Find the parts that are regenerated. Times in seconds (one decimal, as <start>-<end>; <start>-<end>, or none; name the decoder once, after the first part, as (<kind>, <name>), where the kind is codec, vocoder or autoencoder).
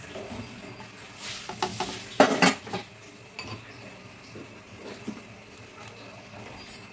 none